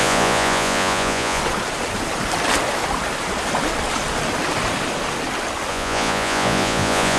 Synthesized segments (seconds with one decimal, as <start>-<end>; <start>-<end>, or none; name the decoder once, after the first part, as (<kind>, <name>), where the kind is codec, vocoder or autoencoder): 0.0-1.4 (vocoder, Vocos); 5.7-7.2